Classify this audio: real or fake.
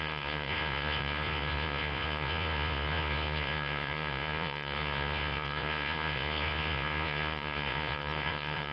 fake